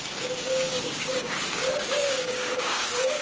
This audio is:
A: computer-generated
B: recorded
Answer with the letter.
A